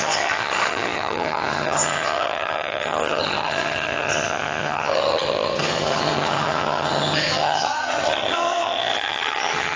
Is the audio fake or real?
fake